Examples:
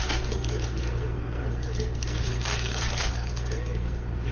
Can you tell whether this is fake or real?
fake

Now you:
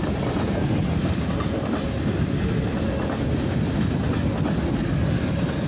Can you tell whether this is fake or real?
real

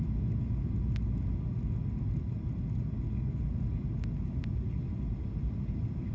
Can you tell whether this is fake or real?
real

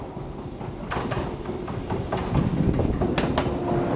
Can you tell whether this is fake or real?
real